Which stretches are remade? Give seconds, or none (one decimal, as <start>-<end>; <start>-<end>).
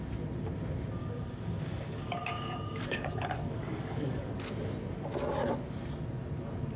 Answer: 1.0-4.3